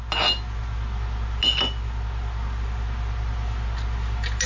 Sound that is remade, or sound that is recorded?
recorded